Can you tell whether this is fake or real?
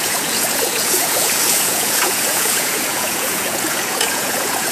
fake